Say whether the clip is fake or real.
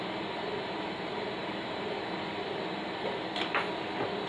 real